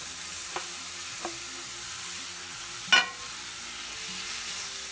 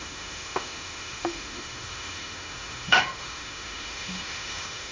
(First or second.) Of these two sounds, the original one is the first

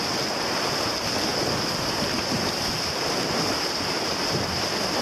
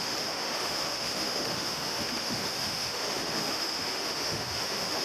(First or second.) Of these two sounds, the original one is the first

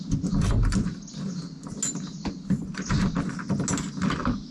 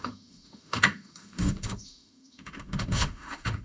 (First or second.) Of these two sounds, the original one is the first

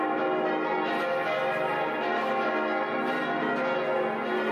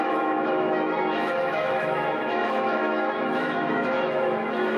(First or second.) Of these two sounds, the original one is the first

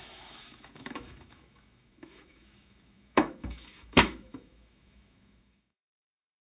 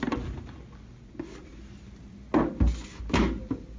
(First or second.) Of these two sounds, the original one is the second